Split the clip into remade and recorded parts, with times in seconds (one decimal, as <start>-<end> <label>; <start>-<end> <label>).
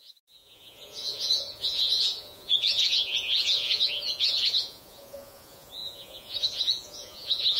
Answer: 0.0-7.6 remade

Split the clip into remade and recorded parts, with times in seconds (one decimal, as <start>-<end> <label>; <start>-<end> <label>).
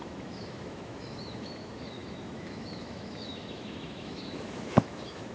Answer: 0.0-5.3 remade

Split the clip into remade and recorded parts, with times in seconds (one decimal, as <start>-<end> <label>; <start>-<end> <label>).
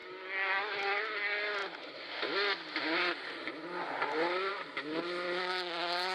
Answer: 0.0-6.1 recorded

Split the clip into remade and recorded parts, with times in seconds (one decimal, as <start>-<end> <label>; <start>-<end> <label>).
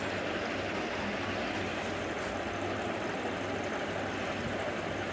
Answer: 0.0-5.1 recorded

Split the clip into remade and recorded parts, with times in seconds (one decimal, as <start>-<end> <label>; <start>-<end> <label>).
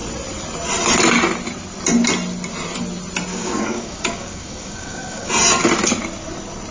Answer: 0.0-3.3 recorded; 3.3-5.3 remade; 5.3-6.7 recorded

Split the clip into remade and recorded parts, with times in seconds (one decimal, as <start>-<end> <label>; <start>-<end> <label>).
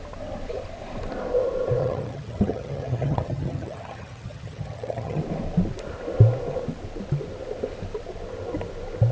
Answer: 0.0-1.8 recorded; 1.8-5.2 remade; 5.2-9.1 recorded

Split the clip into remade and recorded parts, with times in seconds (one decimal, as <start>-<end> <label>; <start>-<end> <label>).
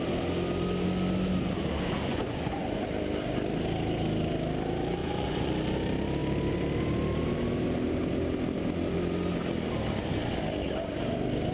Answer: 0.0-2.1 recorded; 2.1-2.8 remade; 2.8-5.0 recorded; 5.0-5.5 remade; 5.5-11.5 recorded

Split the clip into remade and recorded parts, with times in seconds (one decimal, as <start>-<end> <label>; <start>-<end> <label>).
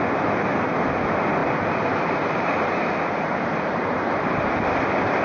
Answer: 0.0-1.4 recorded; 1.4-4.3 remade; 4.3-5.2 recorded